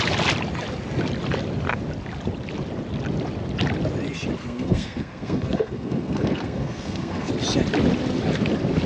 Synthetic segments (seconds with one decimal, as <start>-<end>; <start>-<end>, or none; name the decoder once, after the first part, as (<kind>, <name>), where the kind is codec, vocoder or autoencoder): 4.4-7.3 (codec, SNAC)